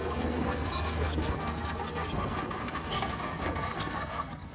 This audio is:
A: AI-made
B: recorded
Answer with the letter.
A